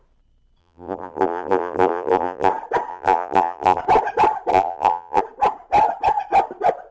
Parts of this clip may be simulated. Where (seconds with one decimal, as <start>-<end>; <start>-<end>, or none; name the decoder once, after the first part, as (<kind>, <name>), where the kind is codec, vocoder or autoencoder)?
0.6-2.5 (vocoder, BigVGAN v2); 2.9-3.8; 4.5-5.2